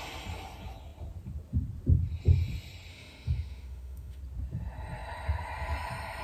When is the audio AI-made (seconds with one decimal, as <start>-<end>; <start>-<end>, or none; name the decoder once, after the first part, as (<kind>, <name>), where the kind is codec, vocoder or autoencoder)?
2.9-4.2 (autoencoder, DAC-VAE)